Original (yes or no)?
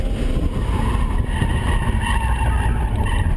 yes